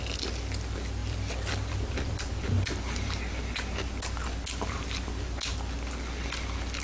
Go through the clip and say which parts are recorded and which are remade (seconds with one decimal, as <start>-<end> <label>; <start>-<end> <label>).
0.0-1.0 recorded; 1.0-3.5 remade; 3.5-5.5 recorded; 5.5-6.2 remade; 6.2-6.8 recorded